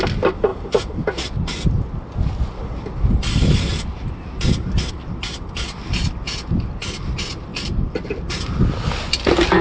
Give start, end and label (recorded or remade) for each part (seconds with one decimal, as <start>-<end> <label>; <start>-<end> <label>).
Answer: 0.0-9.6 recorded